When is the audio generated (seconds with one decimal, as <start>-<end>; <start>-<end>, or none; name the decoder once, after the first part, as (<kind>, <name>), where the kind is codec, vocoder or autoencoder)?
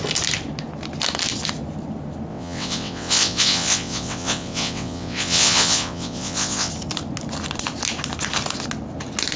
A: 2.3-6.7 (vocoder, WaveNeXt)